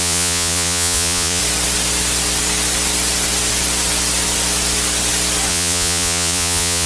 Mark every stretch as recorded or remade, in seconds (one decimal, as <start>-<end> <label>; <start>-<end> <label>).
0.0-1.4 remade; 1.4-5.5 recorded; 5.5-6.9 remade